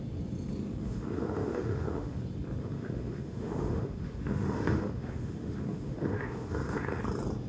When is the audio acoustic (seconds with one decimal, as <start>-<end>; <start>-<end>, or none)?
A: 0.0-0.8; 2.2-2.6; 7.0-7.5